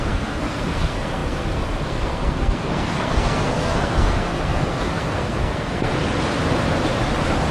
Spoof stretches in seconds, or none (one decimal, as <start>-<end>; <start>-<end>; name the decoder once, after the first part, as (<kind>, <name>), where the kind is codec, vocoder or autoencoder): 0.0-5.9 (codec, SNAC)